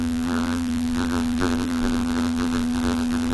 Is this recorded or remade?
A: remade